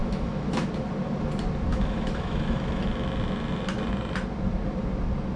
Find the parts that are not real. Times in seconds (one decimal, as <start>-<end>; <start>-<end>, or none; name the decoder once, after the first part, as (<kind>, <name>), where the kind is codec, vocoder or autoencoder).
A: 0.0-0.7 (autoencoder, DAC-VAE); 1.7-2.8